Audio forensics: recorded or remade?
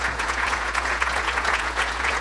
remade